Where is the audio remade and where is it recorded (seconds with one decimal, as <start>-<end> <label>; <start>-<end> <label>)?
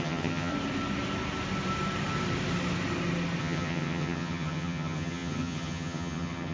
0.0-0.5 remade; 0.5-3.4 recorded; 3.4-6.5 remade